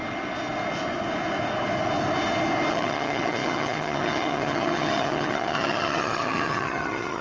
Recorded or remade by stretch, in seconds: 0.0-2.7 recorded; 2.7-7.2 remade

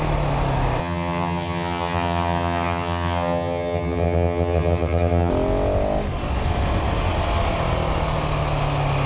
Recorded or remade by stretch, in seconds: 0.0-0.8 recorded; 0.8-5.3 remade; 5.3-9.1 recorded

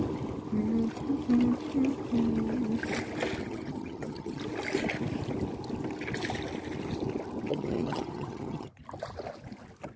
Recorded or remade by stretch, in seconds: 0.0-3.4 recorded; 3.4-4.4 remade; 4.4-7.5 recorded; 7.5-8.8 remade; 8.8-10.0 recorded

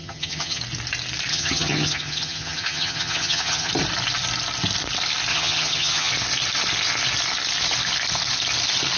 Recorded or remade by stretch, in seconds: 0.0-0.6 remade; 0.6-1.3 recorded; 1.3-3.7 remade; 3.7-5.3 recorded; 5.3-6.1 remade; 6.1-9.0 recorded

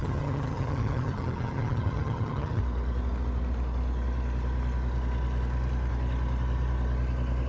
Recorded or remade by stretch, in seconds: 0.0-2.6 remade; 2.6-7.5 recorded

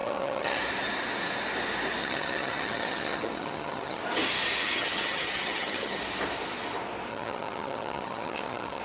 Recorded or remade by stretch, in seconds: 0.0-0.6 remade; 0.6-2.0 recorded; 2.0-4.0 remade; 4.0-4.6 recorded; 4.6-6.0 remade; 6.0-7.1 recorded; 7.1-8.8 remade